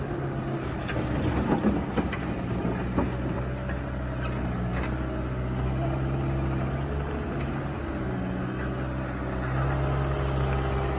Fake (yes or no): no